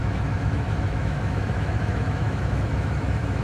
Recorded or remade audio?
remade